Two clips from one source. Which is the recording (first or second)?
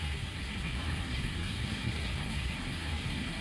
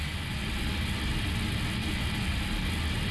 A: second